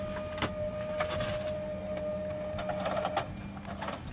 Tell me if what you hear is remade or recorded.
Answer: recorded